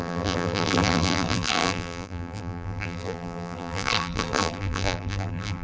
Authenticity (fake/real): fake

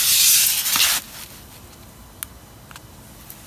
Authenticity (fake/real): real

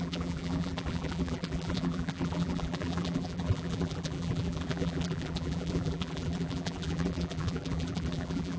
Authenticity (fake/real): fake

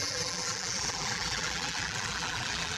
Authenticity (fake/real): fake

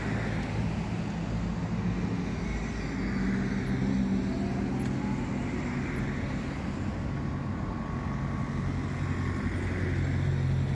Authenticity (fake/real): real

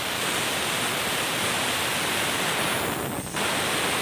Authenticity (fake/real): real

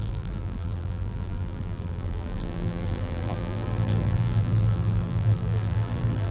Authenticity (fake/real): fake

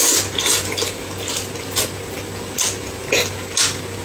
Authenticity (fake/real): real